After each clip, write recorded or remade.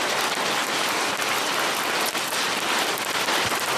recorded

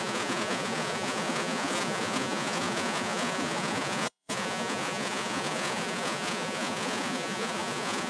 remade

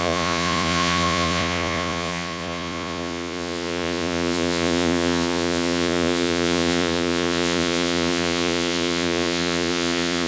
remade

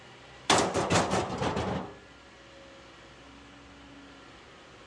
recorded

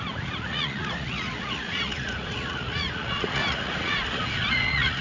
remade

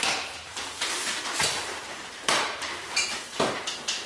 recorded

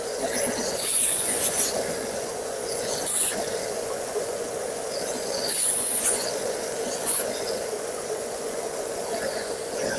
remade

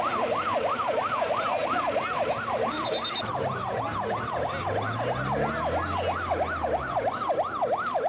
recorded